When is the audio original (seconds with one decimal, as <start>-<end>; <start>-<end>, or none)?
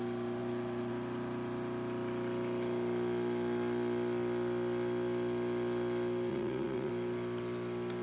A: 0.0-6.3; 6.9-8.0